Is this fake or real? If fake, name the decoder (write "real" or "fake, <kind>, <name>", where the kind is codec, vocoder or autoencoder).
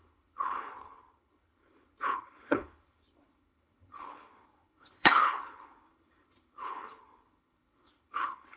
fake, codec, HILCodec